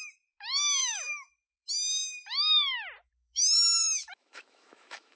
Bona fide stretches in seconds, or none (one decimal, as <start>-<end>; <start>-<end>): 0.0-0.8; 1.7-3.0